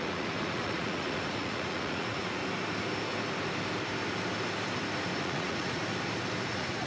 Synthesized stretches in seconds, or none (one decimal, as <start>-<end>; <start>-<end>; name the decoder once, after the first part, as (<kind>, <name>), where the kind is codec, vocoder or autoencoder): 0.0-2.4 (vocoder, Vocos); 5.2-5.8; 6.5-6.9